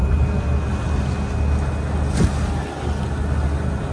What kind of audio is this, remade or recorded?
recorded